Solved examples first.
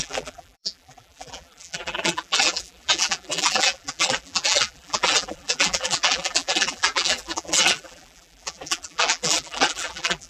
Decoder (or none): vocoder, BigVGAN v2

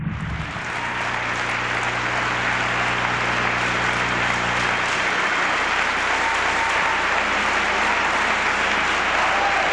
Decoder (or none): none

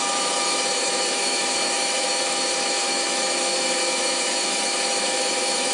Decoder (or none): autoencoder, DAC-VAE